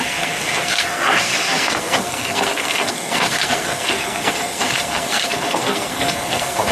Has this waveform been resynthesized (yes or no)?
yes